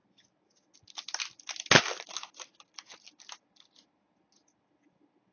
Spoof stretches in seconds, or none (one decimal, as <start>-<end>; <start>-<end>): none